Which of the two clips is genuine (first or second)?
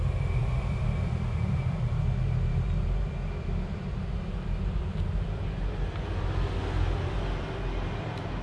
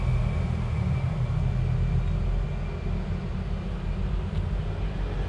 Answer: second